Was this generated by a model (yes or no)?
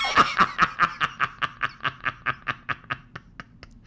no